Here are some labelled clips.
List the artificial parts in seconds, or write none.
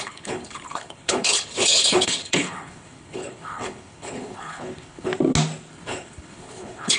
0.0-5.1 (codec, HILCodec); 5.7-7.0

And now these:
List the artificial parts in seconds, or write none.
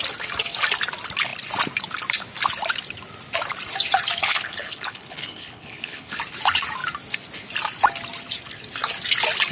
4.2-6.1 (codec, HILCodec)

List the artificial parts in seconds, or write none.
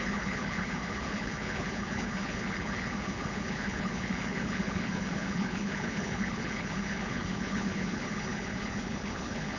0.0-9.6 (codec, HILCodec)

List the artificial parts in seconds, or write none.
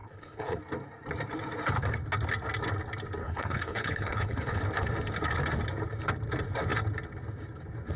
0.0-0.6 (codec, HILCodec); 3.2-4.6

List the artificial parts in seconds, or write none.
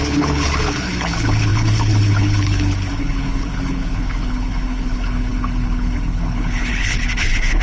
0.0-7.6 (codec, HILCodec)